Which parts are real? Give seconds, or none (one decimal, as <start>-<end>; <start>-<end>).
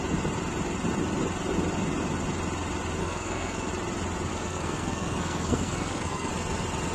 0.0-3.0; 3.7-4.3; 6.3-6.9